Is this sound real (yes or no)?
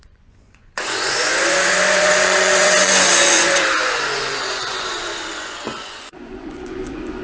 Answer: no